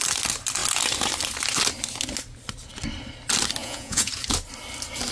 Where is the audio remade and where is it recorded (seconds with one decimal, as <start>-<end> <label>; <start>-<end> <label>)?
0.0-3.6 recorded; 3.6-4.1 remade; 4.1-5.1 recorded